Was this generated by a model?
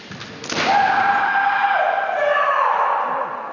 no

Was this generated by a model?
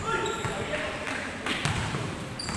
yes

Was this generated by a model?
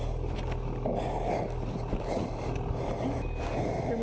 no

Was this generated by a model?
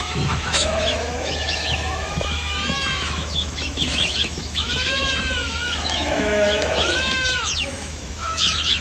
yes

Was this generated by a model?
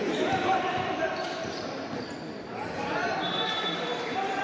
yes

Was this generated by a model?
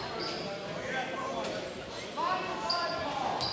no